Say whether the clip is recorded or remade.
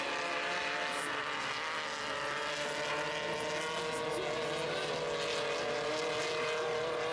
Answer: recorded